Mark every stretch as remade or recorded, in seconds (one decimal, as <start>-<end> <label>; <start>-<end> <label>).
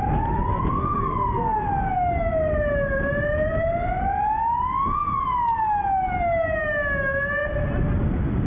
0.0-8.5 recorded